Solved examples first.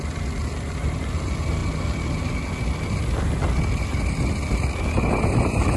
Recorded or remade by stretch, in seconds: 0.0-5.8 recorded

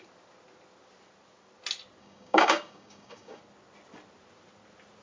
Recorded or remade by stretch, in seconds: 0.0-2.0 recorded; 2.0-3.4 remade; 3.4-5.0 recorded

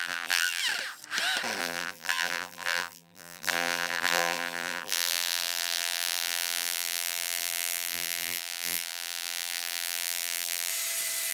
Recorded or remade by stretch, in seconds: 0.0-0.6 remade; 0.6-1.6 recorded; 1.6-10.7 remade; 10.7-11.3 recorded

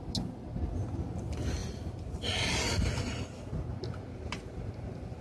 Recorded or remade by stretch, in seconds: 0.0-5.2 recorded